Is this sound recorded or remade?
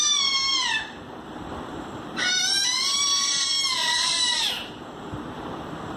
remade